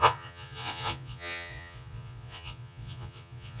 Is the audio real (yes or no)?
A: no